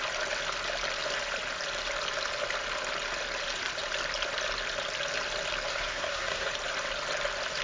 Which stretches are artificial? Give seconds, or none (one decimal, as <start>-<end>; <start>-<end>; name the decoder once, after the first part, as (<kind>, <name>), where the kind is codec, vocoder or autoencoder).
5.7-6.5 (codec, SNAC)